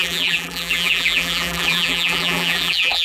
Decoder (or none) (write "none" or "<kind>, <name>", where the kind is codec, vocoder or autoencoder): vocoder, BigVGAN v2